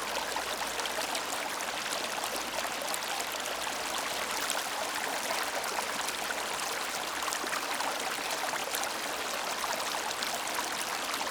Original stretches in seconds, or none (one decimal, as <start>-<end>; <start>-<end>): 0.0-11.3